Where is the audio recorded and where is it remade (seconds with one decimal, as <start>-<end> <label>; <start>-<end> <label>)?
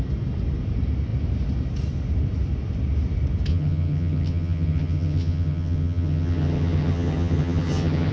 0.0-3.5 recorded; 3.5-8.1 remade